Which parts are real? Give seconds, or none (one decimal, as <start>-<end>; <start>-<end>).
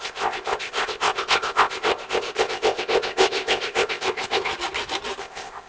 4.5-5.2